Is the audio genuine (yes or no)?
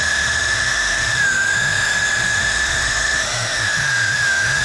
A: no